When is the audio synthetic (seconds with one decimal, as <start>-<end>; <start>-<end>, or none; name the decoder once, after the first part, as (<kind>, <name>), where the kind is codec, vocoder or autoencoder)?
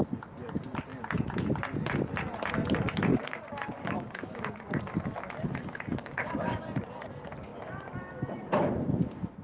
3.1-4.8 (codec, DAC); 6.0-6.6